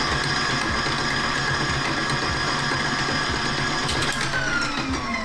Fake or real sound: real